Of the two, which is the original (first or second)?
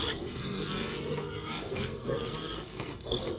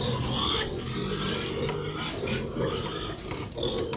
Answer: second